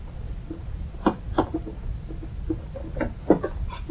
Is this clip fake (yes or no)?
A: no